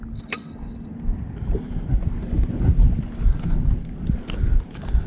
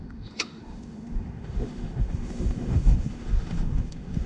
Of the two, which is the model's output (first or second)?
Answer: second